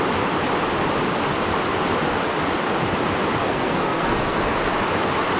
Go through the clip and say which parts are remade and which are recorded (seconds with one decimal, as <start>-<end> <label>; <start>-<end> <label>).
0.0-3.4 recorded; 3.4-4.4 remade; 4.4-5.4 recorded